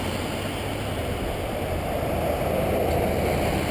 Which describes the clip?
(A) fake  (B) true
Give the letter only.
B